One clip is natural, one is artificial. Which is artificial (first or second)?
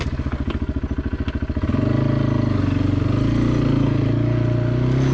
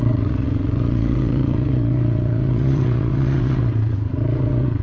second